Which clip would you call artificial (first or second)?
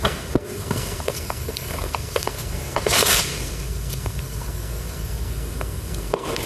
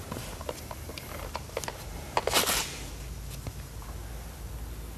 first